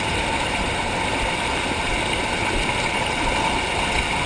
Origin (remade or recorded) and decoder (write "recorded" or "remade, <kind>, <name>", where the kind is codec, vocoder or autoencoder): recorded